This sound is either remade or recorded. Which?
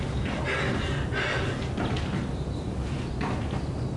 recorded